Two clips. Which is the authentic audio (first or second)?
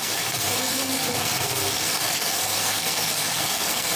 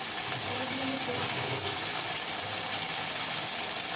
second